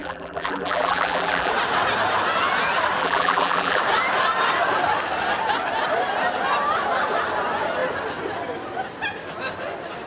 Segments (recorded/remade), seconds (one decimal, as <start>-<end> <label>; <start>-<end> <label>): 0.0-1.5 remade; 1.5-3.0 recorded; 3.0-3.8 remade; 3.8-10.1 recorded